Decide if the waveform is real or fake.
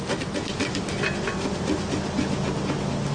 real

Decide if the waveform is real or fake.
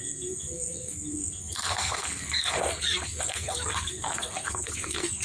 fake